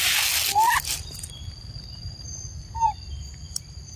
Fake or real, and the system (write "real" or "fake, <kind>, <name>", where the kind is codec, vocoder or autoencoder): real